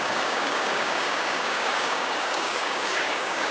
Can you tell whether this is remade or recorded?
remade